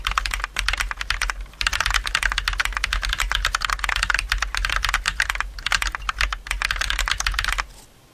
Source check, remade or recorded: recorded